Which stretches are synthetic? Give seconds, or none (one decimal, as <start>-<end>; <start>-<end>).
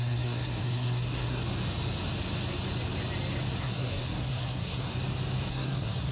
0.0-1.4; 3.6-4.9; 5.5-6.1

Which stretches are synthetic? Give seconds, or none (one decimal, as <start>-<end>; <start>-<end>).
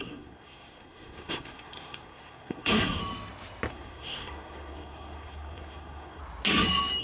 0.0-3.0; 3.7-6.2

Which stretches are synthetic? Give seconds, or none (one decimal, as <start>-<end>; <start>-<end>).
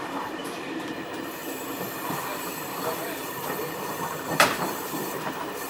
0.0-1.4; 2.1-5.7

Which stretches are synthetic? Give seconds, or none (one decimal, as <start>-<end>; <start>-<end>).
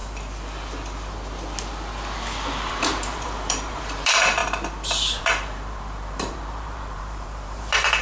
2.7-4.4; 5.2-8.0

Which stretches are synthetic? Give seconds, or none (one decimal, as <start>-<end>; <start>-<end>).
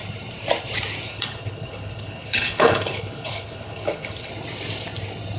1.1-4.3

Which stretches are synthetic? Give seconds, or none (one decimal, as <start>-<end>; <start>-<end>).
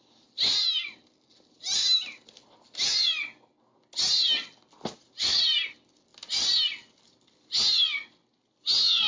none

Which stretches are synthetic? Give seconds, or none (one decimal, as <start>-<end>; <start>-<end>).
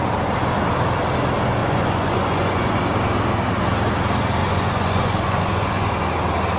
1.6-2.8; 4.4-5.9